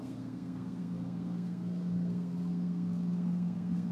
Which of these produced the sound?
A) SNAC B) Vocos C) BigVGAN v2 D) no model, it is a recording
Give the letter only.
A